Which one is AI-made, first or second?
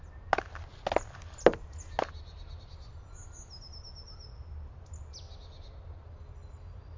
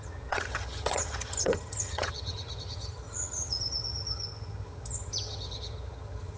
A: second